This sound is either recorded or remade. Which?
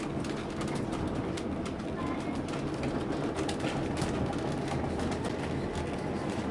recorded